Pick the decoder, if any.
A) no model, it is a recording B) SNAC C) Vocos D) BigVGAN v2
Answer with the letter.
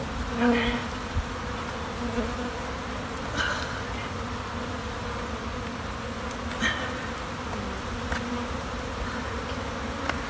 A